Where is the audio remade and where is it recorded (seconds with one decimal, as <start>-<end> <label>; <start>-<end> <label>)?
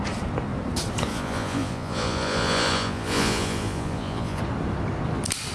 0.0-1.1 recorded; 1.1-4.4 remade; 4.4-5.5 recorded